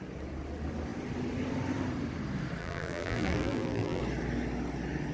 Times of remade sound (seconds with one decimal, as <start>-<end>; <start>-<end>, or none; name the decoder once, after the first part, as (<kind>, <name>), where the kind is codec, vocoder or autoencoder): 2.6-4.0 (vocoder, BigVGAN v2)